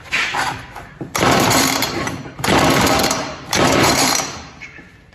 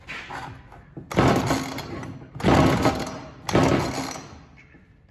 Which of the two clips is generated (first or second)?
first